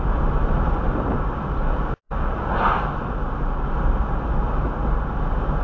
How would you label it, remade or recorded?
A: recorded